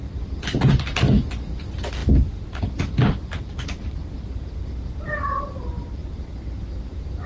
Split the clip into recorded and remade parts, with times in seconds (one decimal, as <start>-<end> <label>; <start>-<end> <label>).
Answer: 0.0-7.3 recorded